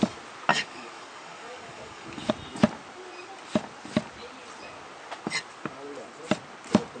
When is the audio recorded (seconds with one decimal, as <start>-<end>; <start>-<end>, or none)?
0.0-0.5; 2.3-7.0